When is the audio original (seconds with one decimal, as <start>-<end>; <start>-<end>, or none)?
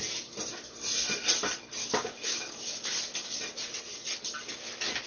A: 0.0-1.8; 2.9-5.1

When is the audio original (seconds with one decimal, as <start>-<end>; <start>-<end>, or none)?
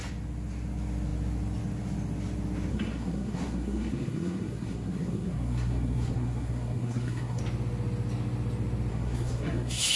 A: 0.0-2.7; 7.4-8.9